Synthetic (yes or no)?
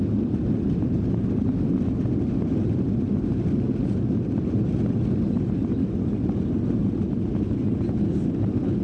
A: no